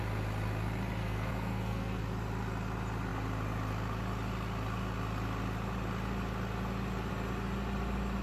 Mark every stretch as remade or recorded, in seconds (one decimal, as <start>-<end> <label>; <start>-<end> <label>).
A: 0.0-1.0 recorded; 1.0-2.0 remade; 2.0-8.2 recorded